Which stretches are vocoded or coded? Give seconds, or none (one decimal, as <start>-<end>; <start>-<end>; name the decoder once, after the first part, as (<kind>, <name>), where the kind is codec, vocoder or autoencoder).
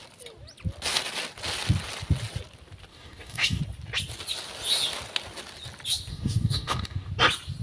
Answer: 2.9-3.6 (codec, DAC); 6.1-7.1